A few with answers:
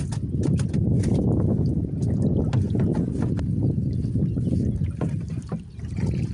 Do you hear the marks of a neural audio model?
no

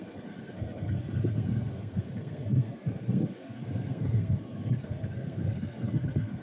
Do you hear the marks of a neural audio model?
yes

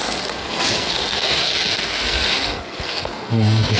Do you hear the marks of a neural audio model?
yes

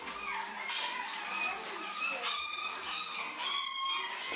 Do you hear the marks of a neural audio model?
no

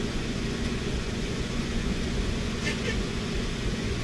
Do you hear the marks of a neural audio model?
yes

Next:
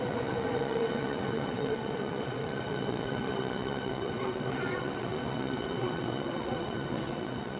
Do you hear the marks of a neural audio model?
yes